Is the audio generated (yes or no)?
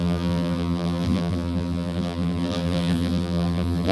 yes